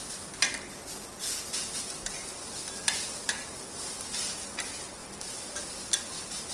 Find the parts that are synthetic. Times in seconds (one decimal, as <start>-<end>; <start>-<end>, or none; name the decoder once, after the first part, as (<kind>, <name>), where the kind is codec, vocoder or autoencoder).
none